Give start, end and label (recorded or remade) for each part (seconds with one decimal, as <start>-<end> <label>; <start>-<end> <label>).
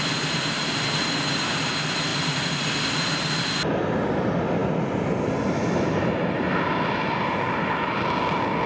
0.0-8.7 recorded